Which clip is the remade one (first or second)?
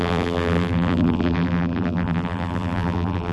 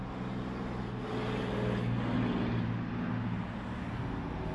first